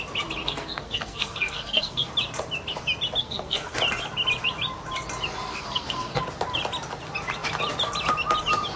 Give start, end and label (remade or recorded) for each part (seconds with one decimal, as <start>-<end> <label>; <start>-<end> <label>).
0.0-0.4 recorded; 0.4-2.1 remade; 2.1-3.2 recorded; 3.2-3.8 remade; 3.8-5.5 recorded; 5.5-6.2 remade; 6.2-8.8 recorded